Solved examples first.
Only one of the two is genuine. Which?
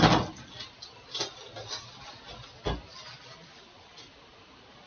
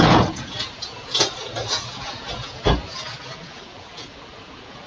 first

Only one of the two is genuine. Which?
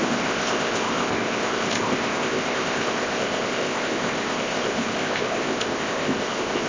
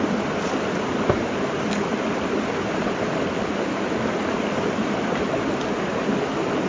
second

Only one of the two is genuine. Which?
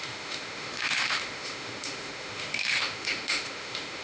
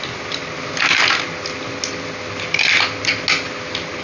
second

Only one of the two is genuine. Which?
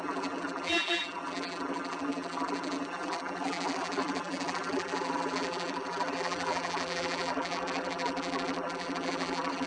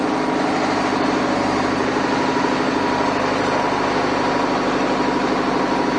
second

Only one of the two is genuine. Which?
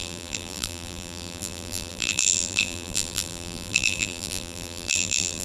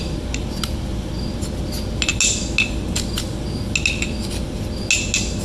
second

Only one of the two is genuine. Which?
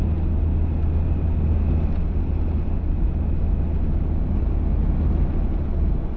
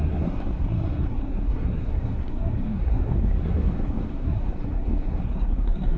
first